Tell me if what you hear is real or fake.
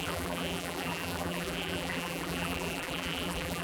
fake